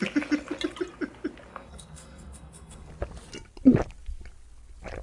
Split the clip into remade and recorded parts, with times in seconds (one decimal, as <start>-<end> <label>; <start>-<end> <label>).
0.0-1.5 recorded; 1.5-2.9 remade; 2.9-5.0 recorded